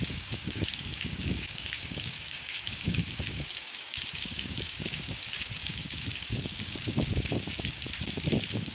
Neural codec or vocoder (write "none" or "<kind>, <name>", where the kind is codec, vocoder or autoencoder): codec, DAC